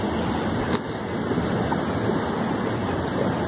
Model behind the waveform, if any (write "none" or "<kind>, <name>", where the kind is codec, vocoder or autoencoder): none